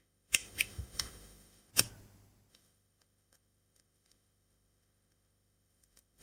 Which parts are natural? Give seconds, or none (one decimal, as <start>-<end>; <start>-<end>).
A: 1.7-2.5